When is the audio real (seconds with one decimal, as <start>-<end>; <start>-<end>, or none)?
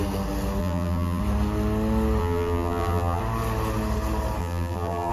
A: 0.0-0.6; 1.2-2.2; 3.2-4.4